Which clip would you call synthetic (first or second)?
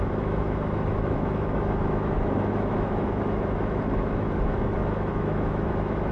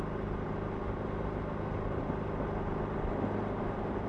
first